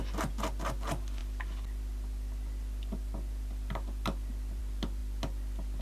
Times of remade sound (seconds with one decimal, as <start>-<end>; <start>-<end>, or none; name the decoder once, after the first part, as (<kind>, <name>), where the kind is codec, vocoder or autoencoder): none

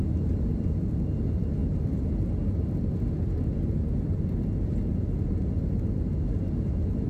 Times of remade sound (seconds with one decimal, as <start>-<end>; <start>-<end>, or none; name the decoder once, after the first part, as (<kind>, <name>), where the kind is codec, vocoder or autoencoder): none

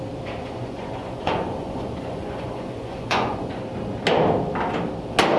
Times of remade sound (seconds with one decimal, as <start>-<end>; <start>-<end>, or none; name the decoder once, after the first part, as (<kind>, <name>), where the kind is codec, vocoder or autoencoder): 0.4-3.6 (vocoder, Vocos)

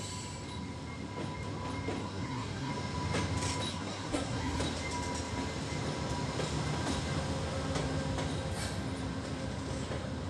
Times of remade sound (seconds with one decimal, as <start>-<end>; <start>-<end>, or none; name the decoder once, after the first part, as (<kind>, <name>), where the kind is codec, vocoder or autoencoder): 2.0-2.7 (codec, SNAC); 3.7-4.6

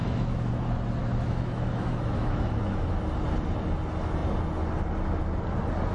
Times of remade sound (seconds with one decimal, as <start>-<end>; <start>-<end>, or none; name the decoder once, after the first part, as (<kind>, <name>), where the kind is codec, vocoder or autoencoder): 0.0-0.5 (autoencoder, DAC-VAE); 1.0-2.6

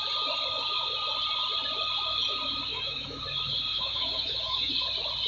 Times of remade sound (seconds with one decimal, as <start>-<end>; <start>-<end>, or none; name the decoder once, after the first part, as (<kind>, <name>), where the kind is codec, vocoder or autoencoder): 2.7-3.2 (autoencoder, DAC-VAE); 3.7-4.7

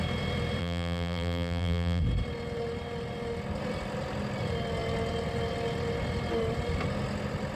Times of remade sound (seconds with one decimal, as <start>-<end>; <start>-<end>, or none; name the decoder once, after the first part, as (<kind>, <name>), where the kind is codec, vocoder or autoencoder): 0.6-2.0 (vocoder, BigVGAN v2)